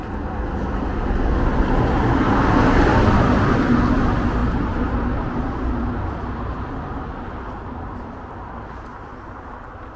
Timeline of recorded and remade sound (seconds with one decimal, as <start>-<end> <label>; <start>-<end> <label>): 0.0-4.4 recorded; 4.4-9.5 remade; 9.5-10.0 recorded